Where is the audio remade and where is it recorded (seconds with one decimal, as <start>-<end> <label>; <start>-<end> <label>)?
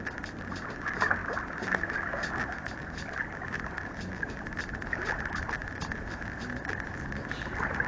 0.0-7.9 recorded